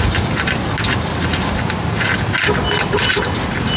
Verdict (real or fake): real